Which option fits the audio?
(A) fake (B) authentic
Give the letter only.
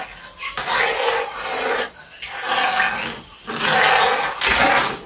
B